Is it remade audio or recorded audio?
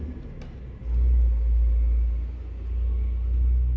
recorded